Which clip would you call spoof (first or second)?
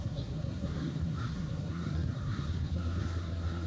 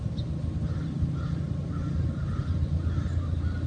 first